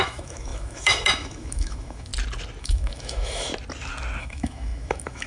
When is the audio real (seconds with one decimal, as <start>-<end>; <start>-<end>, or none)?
2.1-2.6; 3.5-4.2

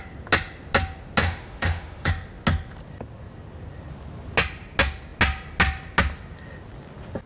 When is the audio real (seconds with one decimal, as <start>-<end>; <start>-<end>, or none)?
0.0-1.2; 2.1-7.3

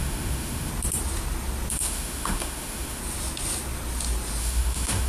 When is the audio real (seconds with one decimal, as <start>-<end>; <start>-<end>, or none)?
0.7-1.7; 3.0-4.4

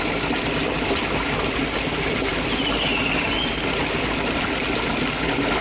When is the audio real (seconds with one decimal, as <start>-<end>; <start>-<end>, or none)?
0.0-5.6

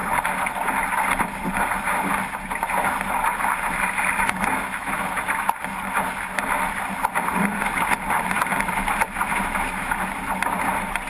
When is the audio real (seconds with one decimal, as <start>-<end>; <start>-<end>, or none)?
0.0-11.1